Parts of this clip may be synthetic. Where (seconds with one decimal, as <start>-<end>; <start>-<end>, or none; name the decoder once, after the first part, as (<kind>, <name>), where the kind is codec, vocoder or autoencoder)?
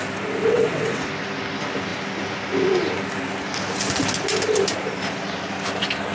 0.4-1.1 (vocoder, WaveNeXt)